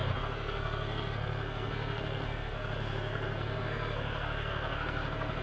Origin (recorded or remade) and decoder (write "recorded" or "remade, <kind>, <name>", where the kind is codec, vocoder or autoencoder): remade, codec, SNAC